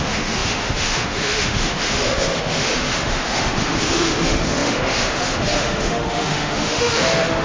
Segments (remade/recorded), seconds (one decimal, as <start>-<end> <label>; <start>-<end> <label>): 0.0-7.4 remade